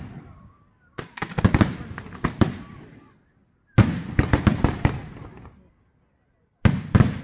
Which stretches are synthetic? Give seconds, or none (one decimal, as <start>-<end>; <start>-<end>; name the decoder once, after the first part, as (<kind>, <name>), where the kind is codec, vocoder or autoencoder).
none